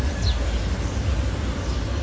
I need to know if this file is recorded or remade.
recorded